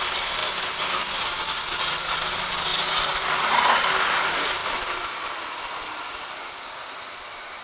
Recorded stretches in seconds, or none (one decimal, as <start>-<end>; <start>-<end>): 0.0-0.4; 1.2-2.7; 3.5-4.6; 5.3-7.6